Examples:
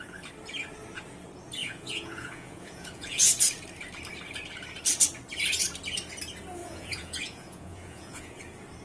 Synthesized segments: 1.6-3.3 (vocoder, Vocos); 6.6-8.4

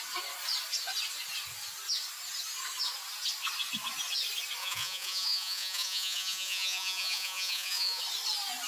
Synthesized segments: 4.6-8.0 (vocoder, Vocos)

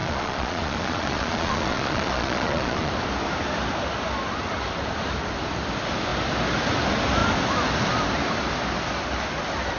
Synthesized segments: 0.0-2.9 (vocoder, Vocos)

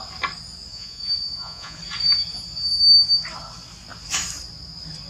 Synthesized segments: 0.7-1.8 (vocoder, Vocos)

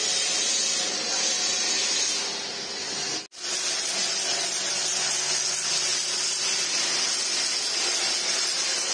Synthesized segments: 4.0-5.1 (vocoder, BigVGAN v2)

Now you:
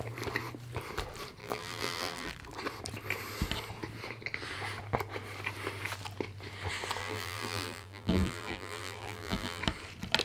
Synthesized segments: 1.4-2.3 (vocoder, BigVGAN v2); 7.0-9.6

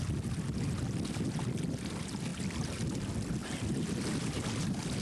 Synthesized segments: none

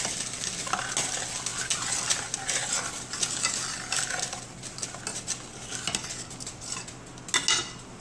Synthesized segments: none